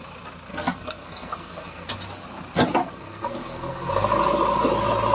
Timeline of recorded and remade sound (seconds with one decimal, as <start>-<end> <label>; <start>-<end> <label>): 0.0-0.5 recorded; 0.5-1.9 remade; 1.9-2.8 recorded; 2.8-3.9 remade; 3.9-5.1 recorded